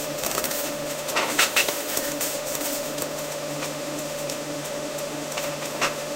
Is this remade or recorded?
remade